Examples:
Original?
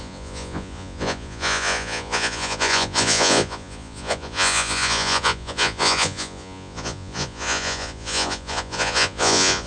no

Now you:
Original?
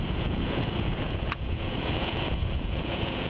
no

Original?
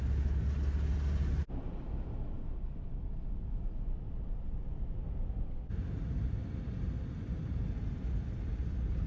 yes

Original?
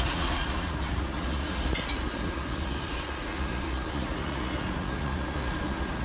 no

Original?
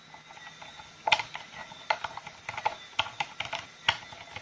yes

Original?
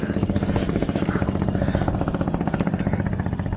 yes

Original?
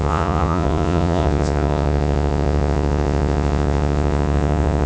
no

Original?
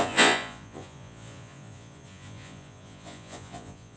no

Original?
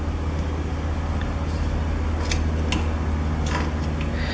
yes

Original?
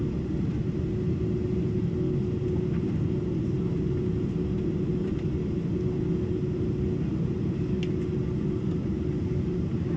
yes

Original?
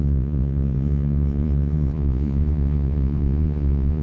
no